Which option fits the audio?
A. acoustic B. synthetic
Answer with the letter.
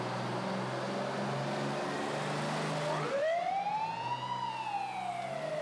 A